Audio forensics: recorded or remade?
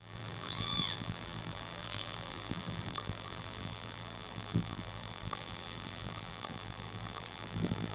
remade